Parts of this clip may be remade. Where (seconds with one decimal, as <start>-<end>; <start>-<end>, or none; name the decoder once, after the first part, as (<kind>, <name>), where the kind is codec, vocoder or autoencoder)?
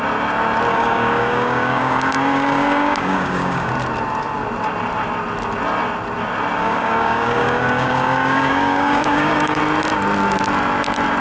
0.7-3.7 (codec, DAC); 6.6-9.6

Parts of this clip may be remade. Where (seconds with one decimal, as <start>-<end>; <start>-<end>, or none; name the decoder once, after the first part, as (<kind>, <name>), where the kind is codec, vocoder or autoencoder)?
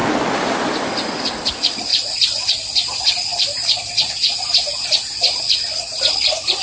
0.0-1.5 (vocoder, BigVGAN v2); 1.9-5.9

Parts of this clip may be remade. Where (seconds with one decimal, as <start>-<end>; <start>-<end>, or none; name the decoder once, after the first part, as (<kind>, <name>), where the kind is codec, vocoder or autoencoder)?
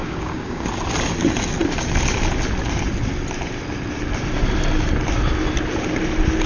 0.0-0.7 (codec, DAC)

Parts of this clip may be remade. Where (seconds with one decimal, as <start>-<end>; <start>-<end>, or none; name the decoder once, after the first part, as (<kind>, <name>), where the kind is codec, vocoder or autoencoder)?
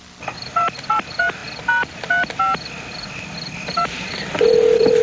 0.0-1.4 (vocoder, BigVGAN v2); 4.4-5.0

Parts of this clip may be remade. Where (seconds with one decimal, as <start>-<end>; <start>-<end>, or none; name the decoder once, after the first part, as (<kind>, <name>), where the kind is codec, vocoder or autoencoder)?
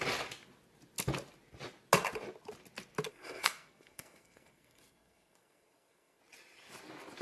3.1-6.2 (codec, SNAC)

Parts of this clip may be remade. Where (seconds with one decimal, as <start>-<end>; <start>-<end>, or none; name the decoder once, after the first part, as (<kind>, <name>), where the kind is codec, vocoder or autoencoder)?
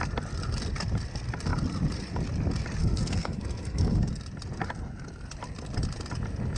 2.8-4.1 (codec, SNAC)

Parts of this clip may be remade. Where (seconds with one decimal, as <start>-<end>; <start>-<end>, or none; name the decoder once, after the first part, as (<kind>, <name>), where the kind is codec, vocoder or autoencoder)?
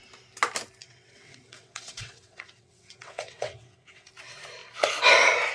0.8-4.1 (vocoder, WaveNeXt)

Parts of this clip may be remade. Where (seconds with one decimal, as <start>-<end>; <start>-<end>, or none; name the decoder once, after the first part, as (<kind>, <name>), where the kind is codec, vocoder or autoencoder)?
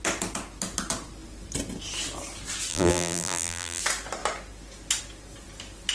2.7-3.8 (vocoder, BigVGAN v2)